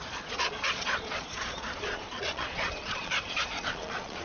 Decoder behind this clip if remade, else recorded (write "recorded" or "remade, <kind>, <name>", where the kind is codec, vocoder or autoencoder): remade, vocoder, Vocos